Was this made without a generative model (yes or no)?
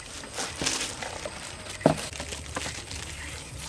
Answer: yes